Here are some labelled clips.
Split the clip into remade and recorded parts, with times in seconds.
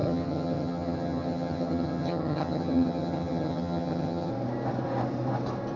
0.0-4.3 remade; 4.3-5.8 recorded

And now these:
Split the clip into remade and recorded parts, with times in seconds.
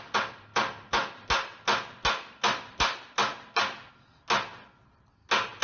0.0-5.6 recorded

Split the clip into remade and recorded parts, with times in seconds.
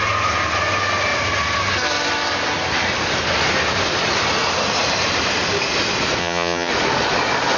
0.0-6.2 recorded; 6.2-6.7 remade; 6.7-7.6 recorded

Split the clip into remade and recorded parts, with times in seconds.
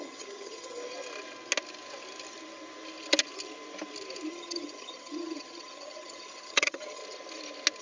0.0-0.8 remade; 0.8-4.3 recorded; 4.3-7.0 remade; 7.0-7.8 recorded